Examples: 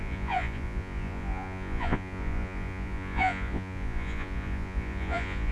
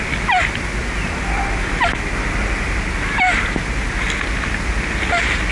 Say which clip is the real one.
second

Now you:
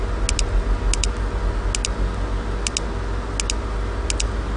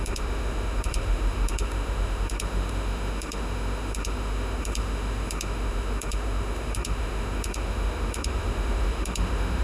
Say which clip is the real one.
first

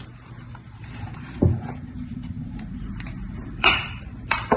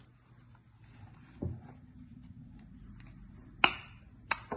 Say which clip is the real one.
second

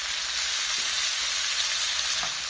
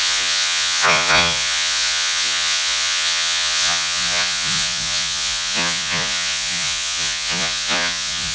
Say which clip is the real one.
first